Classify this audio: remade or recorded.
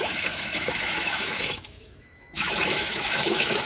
remade